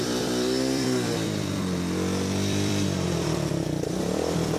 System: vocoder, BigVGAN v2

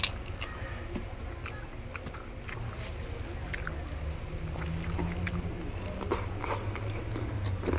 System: none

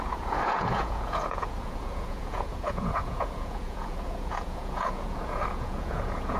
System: vocoder, Vocos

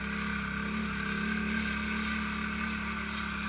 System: none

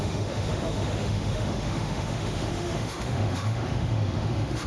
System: autoencoder, DAC-VAE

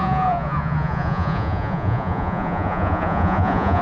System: vocoder, Vocos